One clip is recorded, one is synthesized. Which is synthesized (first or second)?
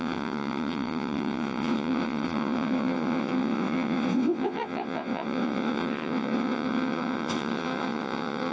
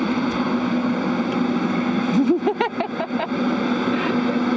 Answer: first